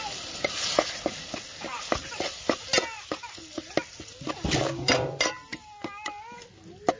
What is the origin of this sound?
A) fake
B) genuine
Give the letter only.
B